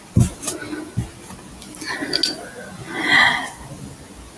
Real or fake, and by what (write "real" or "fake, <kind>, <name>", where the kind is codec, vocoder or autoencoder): real